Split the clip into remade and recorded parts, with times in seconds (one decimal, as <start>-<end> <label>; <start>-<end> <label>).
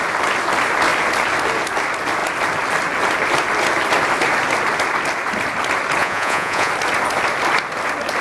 0.0-6.0 recorded; 6.0-6.7 remade; 6.7-8.2 recorded